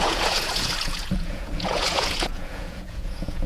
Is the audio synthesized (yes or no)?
yes